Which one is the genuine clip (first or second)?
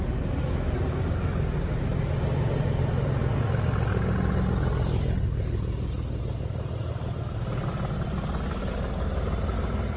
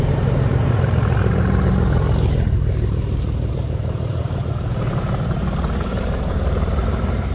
first